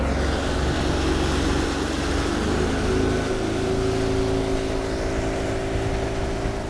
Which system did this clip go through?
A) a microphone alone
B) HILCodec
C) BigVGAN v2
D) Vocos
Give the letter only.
A